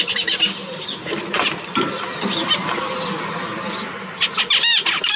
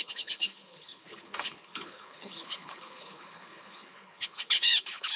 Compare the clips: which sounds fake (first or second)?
second